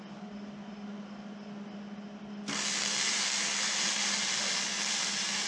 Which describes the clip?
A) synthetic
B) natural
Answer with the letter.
B